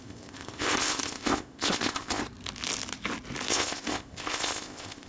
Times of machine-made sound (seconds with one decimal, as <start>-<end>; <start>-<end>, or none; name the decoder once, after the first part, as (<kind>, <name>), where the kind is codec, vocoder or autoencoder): 0.0-2.2 (codec, ZipCodec); 3.5-5.1

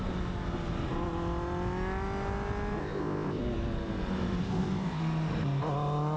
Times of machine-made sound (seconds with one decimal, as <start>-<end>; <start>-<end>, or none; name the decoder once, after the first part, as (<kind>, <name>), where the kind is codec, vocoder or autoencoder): 2.8-3.4 (codec, ZipCodec); 4.4-5.0

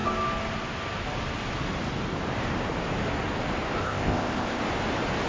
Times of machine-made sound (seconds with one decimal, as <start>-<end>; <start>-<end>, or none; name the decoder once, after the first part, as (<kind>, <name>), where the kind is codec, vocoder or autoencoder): 3.8-4.6 (codec, ZipCodec)

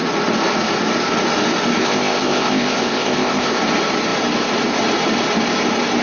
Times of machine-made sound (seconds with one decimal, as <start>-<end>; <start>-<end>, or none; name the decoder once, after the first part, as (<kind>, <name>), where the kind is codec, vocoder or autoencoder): 1.8-3.6 (codec, ZipCodec)

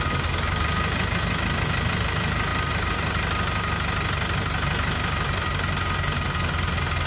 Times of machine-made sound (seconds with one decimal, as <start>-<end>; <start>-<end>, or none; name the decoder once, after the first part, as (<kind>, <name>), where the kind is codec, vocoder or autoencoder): none